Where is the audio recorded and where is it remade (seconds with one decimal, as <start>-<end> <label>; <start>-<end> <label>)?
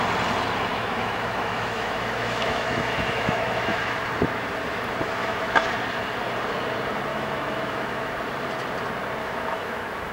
0.0-0.7 recorded; 0.7-4.0 remade; 4.0-5.2 recorded; 5.2-5.7 remade; 5.7-7.1 recorded; 7.1-8.1 remade; 8.1-9.2 recorded; 9.2-10.1 remade